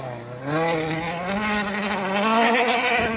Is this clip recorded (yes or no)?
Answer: yes